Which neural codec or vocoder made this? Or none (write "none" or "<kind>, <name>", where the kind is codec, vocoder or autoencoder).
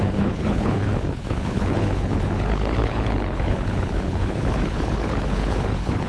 codec, HILCodec